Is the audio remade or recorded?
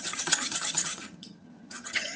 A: remade